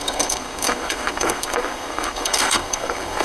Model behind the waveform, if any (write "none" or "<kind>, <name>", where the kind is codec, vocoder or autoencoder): codec, SNAC